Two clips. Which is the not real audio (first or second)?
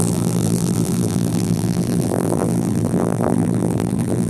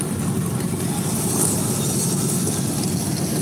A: first